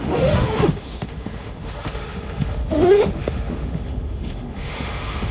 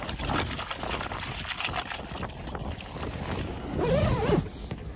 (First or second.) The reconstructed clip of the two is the first